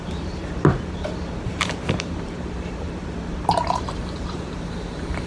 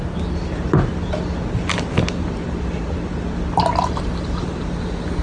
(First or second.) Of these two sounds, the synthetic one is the first